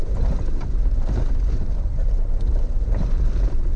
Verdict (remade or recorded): recorded